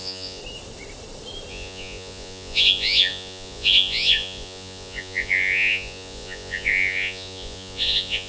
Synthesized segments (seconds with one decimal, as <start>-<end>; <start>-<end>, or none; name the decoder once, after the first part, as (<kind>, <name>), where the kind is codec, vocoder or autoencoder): 0.0-0.4 (vocoder, Vocos); 1.5-8.3